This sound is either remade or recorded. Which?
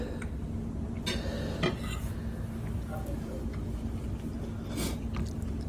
recorded